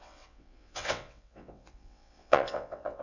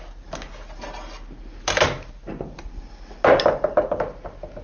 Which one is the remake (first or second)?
first